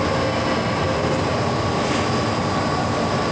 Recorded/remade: recorded